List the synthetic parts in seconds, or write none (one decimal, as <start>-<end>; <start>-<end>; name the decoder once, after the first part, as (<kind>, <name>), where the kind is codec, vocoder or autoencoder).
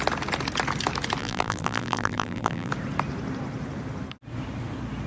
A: 1.2-2.7 (vocoder, BigVGAN v2)